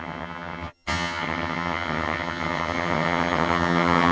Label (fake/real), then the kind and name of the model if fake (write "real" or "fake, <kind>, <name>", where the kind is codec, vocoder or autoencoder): fake, vocoder, HiFi-GAN